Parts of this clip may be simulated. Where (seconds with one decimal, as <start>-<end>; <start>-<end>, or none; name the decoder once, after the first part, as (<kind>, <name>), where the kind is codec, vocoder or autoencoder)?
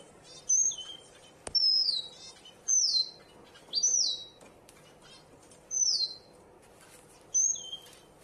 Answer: none